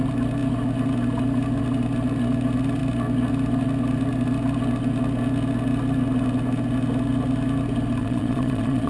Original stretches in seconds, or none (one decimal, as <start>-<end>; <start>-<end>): 0.0-8.0

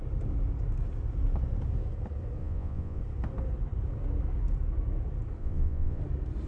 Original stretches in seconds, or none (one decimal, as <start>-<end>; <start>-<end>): 0.0-2.4; 3.0-5.4; 6.0-6.5

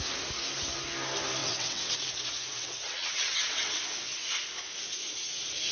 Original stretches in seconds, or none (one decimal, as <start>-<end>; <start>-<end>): 0.0-1.4; 2.1-2.5; 3.8-5.7

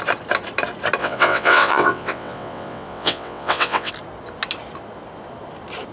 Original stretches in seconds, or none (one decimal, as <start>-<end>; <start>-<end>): 0.0-1.0; 3.9-5.9

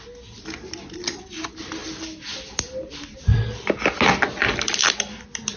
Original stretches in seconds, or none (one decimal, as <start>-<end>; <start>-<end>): 0.0-5.6